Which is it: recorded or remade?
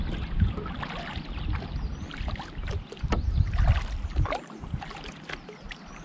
recorded